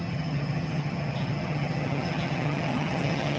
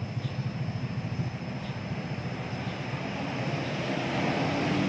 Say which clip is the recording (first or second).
second